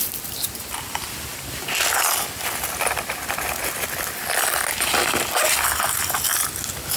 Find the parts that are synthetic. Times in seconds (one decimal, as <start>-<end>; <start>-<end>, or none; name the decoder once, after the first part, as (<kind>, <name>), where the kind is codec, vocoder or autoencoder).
none